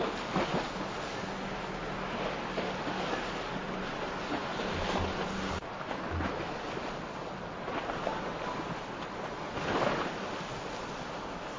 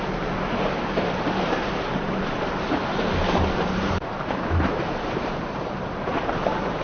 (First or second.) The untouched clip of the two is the first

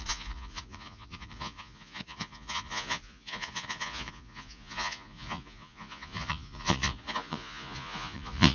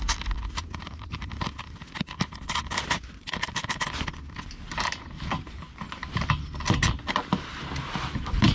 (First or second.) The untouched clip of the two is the second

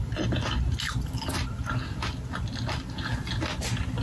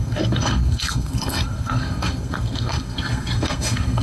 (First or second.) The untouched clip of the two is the first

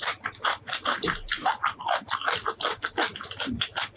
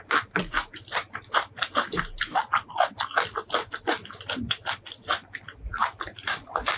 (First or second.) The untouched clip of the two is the second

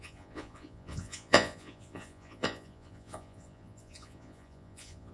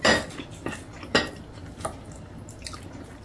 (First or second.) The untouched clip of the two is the second